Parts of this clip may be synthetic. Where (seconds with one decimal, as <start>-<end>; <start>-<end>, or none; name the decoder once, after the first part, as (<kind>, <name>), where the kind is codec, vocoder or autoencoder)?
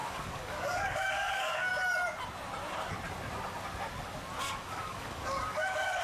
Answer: 0.0-1.7 (codec, DAC); 4.4-6.0